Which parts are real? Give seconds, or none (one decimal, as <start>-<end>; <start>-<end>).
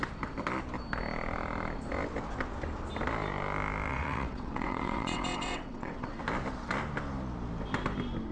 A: 0.0-3.9; 6.2-8.3